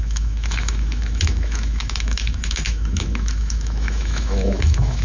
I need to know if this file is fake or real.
fake